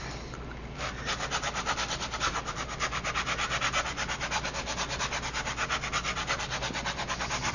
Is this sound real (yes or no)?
yes